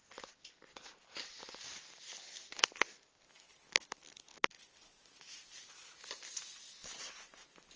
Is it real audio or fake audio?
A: real